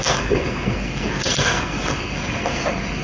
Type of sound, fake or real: fake